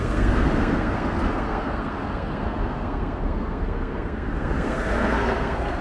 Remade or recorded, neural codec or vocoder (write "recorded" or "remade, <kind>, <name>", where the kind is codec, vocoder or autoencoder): remade, codec, SNAC